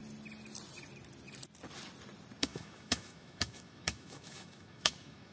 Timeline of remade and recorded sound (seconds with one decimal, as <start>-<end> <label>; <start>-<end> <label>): 0.0-2.4 recorded; 2.4-5.3 remade